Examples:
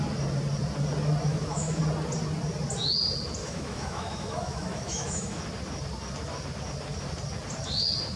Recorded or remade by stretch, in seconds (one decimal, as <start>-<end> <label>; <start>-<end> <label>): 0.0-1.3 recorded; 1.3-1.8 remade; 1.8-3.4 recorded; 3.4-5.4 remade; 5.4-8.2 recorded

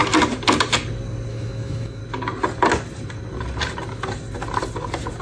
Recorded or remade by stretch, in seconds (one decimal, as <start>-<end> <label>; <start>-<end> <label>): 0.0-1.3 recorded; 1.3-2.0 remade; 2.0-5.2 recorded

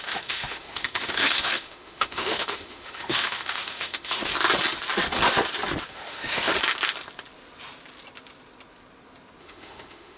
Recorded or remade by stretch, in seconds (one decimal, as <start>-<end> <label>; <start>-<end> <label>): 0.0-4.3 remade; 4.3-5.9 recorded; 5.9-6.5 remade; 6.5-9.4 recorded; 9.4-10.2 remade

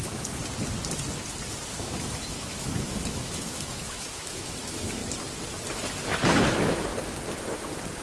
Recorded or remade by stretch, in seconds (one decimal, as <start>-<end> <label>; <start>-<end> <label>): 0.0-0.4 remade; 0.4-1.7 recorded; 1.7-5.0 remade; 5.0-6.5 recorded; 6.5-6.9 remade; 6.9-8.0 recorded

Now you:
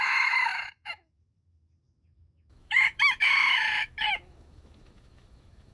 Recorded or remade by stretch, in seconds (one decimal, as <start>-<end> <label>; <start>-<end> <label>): 0.0-5.7 remade

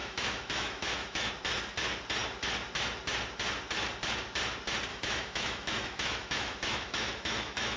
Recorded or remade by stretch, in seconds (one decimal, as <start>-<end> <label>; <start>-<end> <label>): 0.0-1.3 remade; 1.3-4.9 recorded; 4.9-7.8 remade

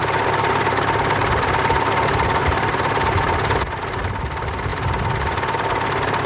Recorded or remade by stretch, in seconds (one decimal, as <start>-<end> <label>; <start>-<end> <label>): 0.0-6.3 recorded